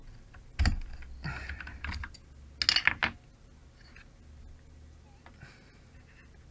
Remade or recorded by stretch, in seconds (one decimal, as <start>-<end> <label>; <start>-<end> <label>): 0.0-6.5 recorded